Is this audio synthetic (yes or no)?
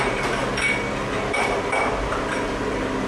yes